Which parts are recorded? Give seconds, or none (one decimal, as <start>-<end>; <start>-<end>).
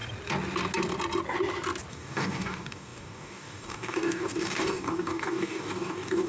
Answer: 0.0-1.9